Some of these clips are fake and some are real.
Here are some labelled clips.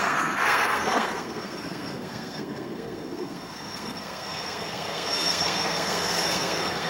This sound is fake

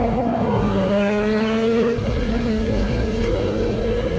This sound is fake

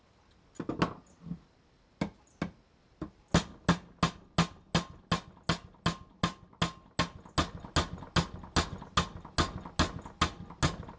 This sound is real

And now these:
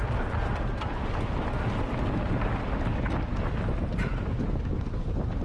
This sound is real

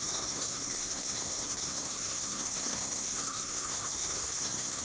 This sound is fake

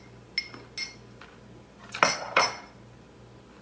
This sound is real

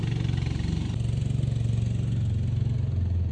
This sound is real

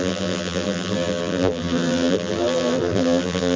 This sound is fake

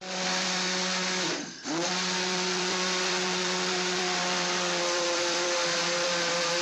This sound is fake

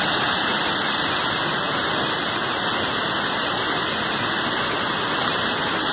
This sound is real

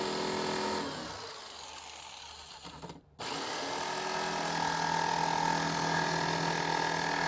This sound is real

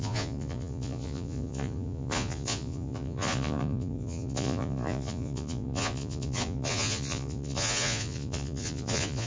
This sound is fake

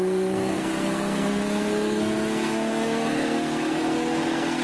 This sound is fake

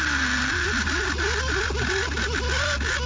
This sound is real